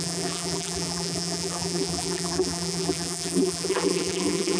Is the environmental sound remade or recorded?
remade